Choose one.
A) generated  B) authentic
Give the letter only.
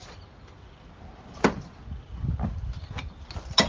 B